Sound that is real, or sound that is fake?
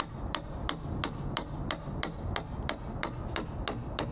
real